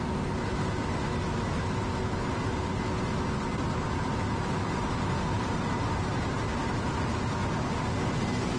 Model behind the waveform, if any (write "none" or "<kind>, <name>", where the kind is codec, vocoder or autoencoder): none